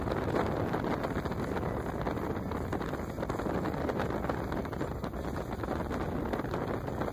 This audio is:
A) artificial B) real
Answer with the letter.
B